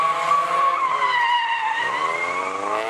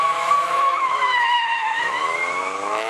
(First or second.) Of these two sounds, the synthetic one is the second